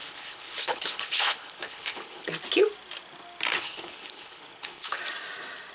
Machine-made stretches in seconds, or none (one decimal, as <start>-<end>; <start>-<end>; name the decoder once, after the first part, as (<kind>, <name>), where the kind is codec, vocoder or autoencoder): 0.0-2.3 (codec, HILCodec); 3.5-5.0